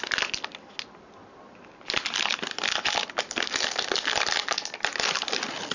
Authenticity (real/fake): real